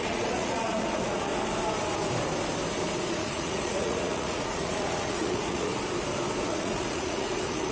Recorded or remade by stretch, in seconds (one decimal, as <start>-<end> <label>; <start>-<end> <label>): 0.0-1.3 remade; 1.3-3.1 recorded; 3.1-5.7 remade; 5.7-6.4 recorded; 6.4-7.7 remade